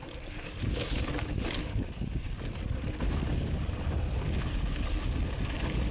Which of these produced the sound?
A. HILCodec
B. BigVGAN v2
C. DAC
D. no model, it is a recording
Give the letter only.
D